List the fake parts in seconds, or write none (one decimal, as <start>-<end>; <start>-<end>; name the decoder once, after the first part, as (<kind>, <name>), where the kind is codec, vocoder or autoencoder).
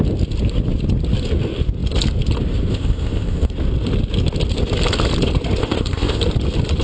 2.7-3.5 (codec, ZipCodec); 5.6-6.2